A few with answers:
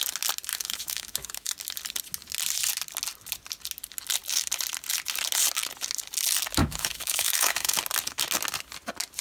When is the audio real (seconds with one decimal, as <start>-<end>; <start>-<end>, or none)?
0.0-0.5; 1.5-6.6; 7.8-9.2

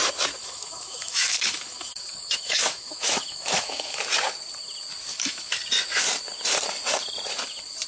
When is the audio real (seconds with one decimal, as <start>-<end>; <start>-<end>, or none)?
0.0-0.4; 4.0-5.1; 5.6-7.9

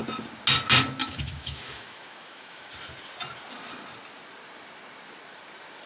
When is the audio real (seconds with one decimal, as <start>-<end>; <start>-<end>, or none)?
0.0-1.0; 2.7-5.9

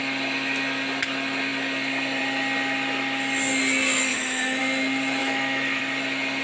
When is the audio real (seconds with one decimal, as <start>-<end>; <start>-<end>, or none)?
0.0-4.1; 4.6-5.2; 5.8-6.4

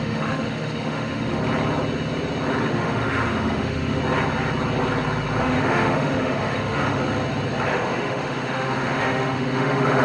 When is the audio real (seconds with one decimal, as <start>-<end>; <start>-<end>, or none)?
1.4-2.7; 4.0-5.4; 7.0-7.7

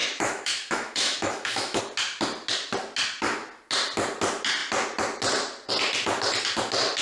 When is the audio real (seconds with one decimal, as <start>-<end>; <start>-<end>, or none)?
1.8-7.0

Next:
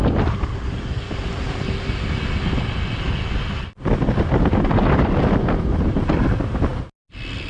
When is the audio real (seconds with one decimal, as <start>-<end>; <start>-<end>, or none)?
0.0-7.5

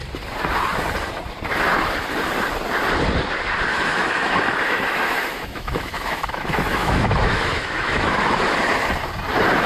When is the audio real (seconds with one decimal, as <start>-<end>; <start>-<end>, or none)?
0.0-3.7; 8.4-9.7